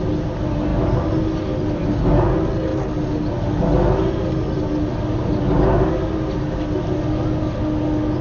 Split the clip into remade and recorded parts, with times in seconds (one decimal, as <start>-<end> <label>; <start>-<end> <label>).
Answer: 0.0-8.2 recorded